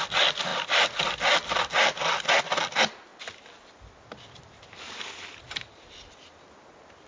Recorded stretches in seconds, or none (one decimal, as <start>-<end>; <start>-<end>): 0.0-7.1